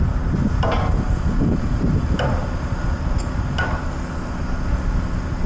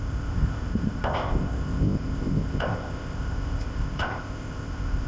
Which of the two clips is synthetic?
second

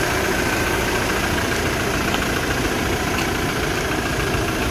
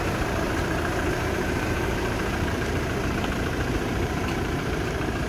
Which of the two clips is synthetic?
second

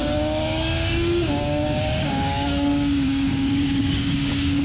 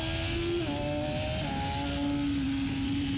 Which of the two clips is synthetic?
first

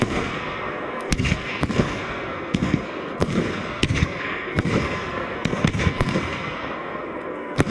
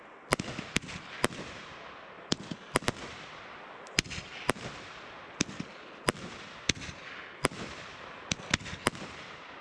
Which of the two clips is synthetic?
first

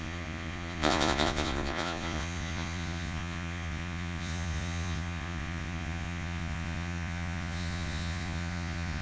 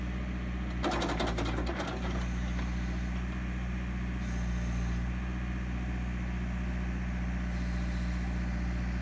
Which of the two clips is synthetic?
first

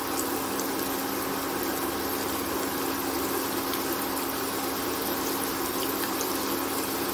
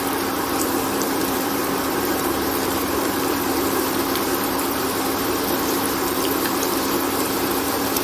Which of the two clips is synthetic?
second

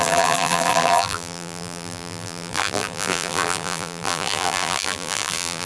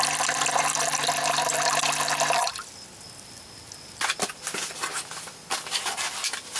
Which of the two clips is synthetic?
first